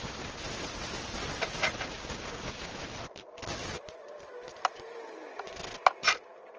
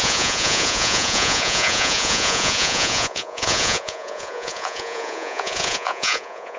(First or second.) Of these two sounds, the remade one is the second